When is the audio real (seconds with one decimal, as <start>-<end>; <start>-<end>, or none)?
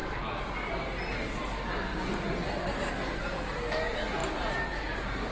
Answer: 0.0-1.9; 2.9-4.2